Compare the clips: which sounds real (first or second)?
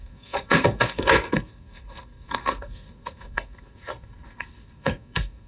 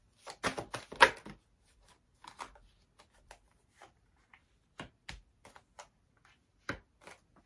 second